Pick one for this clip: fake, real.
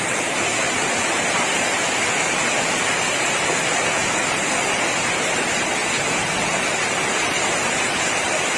real